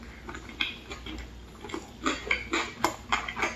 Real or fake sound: real